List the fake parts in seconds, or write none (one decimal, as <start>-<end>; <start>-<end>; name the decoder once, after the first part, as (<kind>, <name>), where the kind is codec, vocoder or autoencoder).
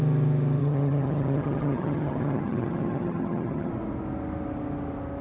0.6-3.7 (vocoder, HiFi-GAN)